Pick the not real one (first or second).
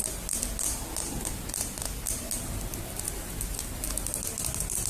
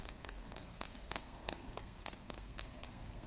second